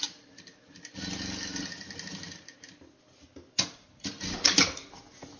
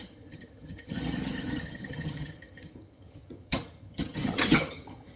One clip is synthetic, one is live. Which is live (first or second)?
first